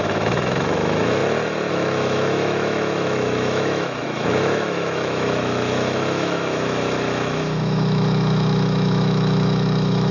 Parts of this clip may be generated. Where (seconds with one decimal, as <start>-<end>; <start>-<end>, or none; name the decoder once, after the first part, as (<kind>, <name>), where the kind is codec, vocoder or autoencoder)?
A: 0.0-1.2 (autoencoder, DAC-VAE); 1.7-10.1